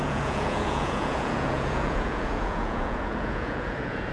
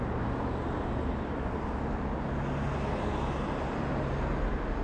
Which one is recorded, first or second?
second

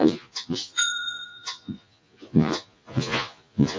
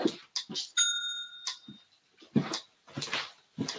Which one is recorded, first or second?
second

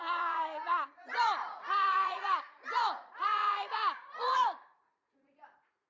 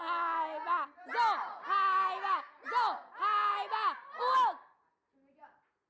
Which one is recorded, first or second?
second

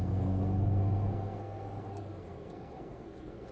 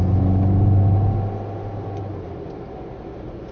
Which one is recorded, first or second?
second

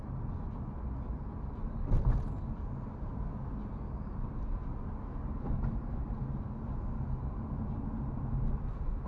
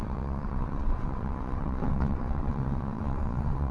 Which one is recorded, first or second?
first